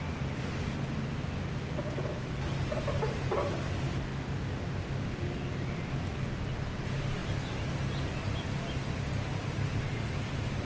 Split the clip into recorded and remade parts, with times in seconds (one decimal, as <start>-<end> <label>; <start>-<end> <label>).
0.0-10.6 recorded